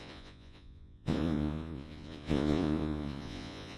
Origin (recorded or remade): remade